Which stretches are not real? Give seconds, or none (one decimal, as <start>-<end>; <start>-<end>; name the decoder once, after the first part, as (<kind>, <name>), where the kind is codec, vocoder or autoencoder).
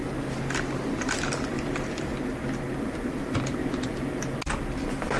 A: 1.1-2.1 (vocoder, BigVGAN v2); 2.8-3.6; 4.5-5.2